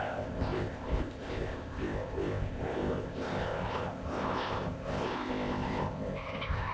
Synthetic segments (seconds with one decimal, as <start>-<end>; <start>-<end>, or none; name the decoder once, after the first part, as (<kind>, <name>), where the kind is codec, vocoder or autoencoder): 0.0-6.7 (codec, ZipCodec)